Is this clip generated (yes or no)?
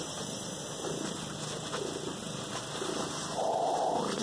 no